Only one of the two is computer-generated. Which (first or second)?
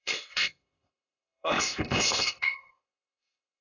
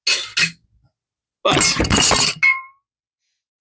first